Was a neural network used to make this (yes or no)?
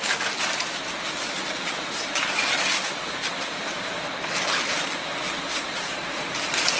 no